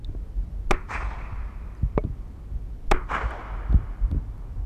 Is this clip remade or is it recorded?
recorded